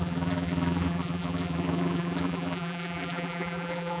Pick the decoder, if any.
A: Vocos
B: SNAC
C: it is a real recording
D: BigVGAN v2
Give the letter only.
D